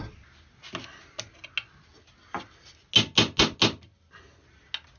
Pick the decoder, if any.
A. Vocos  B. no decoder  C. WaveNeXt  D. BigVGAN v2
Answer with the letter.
B